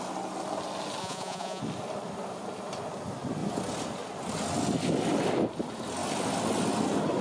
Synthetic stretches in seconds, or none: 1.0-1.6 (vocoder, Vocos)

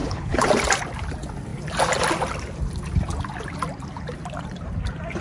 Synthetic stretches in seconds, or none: 0.0-0.5 (codec, HILCodec)

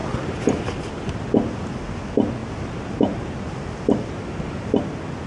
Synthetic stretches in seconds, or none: none

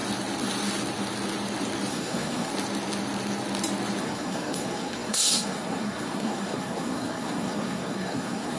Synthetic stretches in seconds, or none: 1.9-2.5 (codec, SNAC); 4.0-8.6